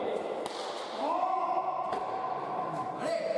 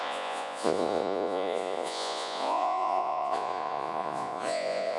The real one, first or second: first